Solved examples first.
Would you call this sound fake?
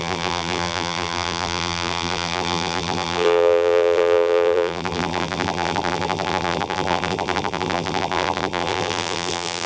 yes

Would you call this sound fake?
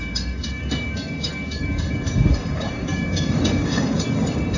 yes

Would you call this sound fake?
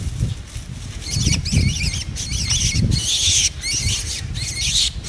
no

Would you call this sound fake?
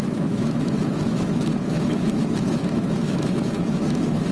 yes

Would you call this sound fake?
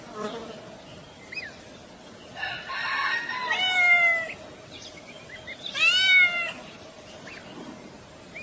no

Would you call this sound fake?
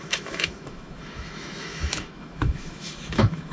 yes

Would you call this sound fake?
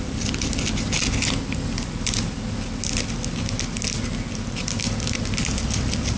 no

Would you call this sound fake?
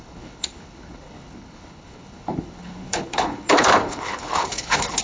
yes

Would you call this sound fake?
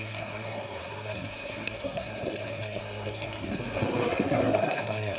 yes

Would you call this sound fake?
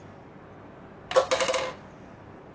no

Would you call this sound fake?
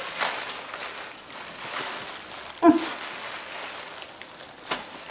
no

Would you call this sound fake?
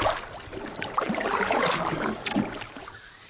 no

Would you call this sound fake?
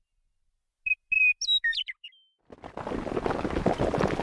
no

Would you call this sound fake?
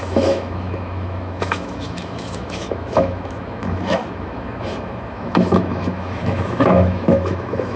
yes